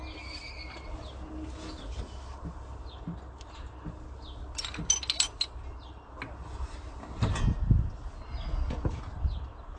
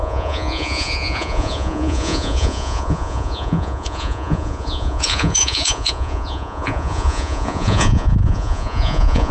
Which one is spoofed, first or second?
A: second